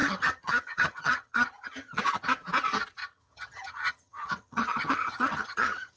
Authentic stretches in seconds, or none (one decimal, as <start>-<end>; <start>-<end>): 2.0-3.0